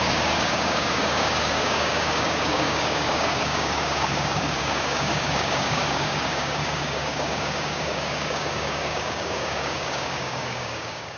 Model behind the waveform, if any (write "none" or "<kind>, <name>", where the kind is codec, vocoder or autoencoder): codec, DAC